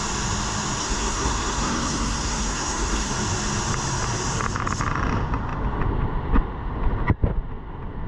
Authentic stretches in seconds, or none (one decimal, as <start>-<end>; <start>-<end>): 0.0-0.8; 3.1-8.1